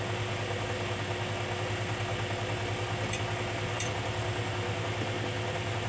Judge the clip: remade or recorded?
recorded